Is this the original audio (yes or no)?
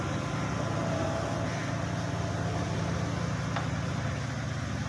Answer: yes